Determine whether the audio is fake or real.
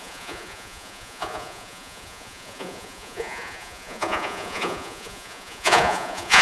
fake